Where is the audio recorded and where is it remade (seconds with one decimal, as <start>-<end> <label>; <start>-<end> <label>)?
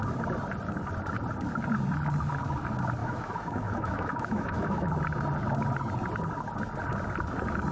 0.0-3.0 recorded; 3.0-4.9 remade; 4.9-7.7 recorded